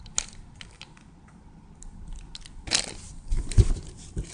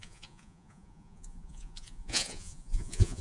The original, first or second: first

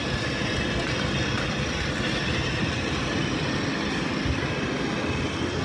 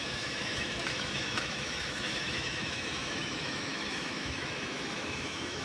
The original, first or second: first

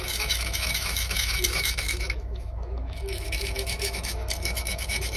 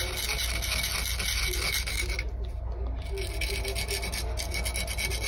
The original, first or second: second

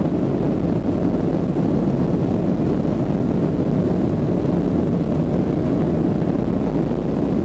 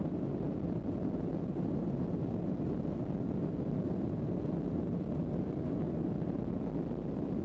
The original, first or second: first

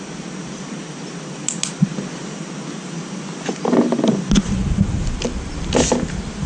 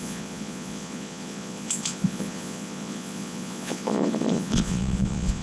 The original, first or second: first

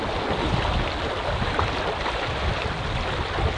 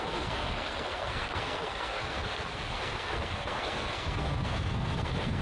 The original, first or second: first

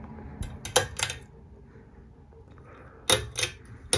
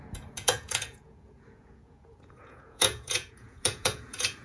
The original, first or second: first